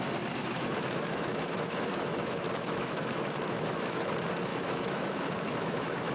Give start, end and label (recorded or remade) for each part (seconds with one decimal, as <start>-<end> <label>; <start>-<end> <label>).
0.0-0.4 recorded; 0.4-4.1 remade; 4.1-4.5 recorded; 4.5-6.1 remade